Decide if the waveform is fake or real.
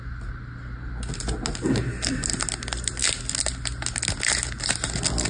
real